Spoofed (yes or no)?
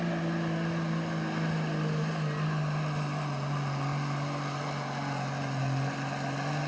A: no